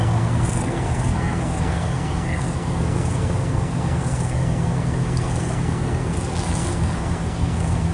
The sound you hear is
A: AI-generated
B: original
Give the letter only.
A